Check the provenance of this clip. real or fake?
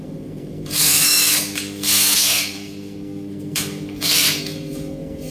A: fake